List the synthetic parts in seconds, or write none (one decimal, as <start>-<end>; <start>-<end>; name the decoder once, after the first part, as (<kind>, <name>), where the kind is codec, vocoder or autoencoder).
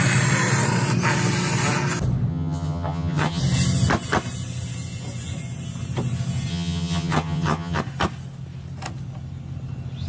2.3-3.4 (vocoder, HiFi-GAN); 6.5-7.8